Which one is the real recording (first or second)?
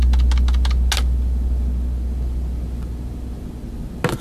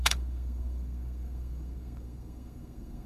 first